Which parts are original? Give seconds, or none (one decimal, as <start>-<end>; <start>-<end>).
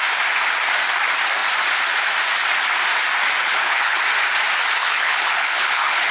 0.0-3.4; 4.0-4.8